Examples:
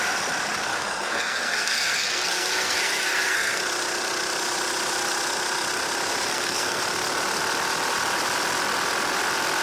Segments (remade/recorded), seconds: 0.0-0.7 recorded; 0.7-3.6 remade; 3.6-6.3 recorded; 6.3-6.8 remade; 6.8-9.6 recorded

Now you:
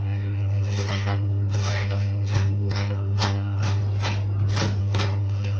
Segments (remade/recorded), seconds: 0.0-3.8 remade; 3.8-4.8 recorded; 4.8-5.6 remade

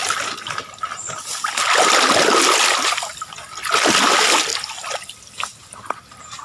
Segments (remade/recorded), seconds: 0.0-6.4 recorded

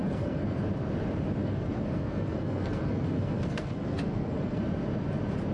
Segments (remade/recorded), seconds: 0.0-0.6 remade; 0.6-1.4 recorded; 1.4-4.6 remade; 4.6-5.5 recorded

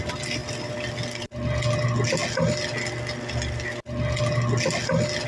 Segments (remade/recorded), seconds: 0.0-5.3 recorded